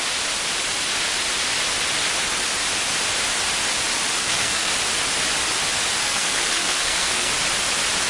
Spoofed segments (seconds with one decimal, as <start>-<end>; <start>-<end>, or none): 4.2-4.7; 6.0-7.3